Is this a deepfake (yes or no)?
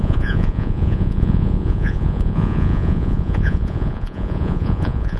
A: yes